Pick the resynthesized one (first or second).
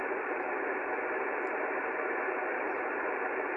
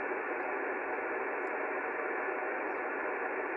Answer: first